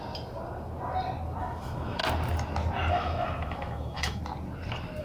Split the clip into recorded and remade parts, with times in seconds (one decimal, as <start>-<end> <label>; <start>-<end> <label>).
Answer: 0.0-1.4 recorded; 1.4-2.0 remade; 2.0-2.9 recorded; 2.9-4.2 remade; 4.2-5.0 recorded